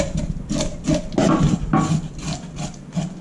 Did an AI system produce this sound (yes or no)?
no